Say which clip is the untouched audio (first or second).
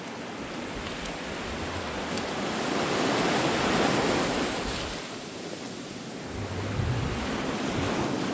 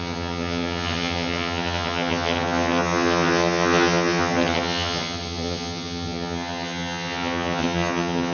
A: first